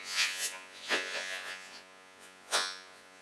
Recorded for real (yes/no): no